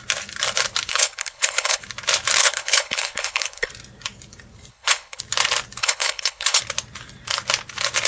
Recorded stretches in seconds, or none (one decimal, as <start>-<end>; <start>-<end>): 0.0-0.9; 1.8-2.4; 3.7-4.7; 5.2-5.8; 6.6-8.1